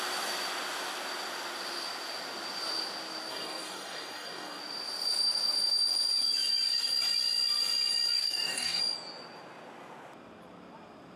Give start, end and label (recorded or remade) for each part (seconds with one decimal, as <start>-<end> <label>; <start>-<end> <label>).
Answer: 0.0-3.3 recorded; 3.3-4.6 remade; 4.6-8.2 recorded; 8.2-8.8 remade; 8.8-11.2 recorded